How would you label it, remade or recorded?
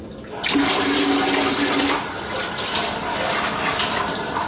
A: recorded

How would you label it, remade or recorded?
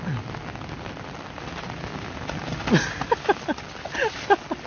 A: recorded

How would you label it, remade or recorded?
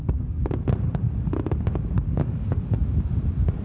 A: recorded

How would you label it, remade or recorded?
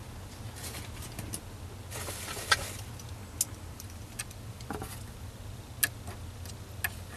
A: recorded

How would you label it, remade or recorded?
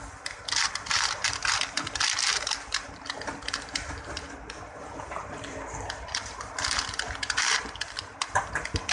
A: remade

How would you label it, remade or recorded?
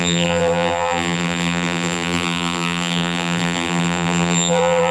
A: remade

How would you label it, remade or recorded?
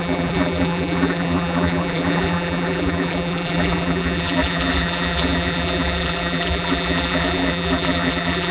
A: remade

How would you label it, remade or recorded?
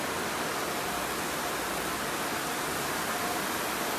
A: recorded